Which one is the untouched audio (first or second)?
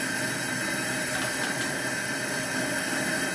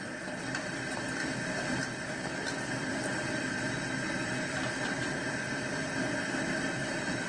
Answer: first